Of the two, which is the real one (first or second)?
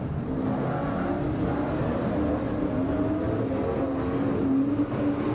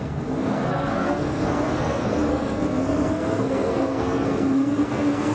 first